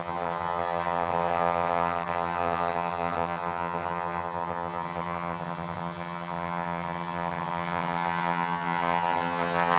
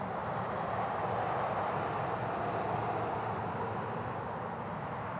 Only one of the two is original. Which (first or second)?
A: second